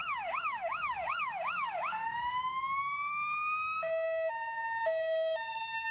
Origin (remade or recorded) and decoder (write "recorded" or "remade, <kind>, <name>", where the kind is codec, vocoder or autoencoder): remade, codec, DAC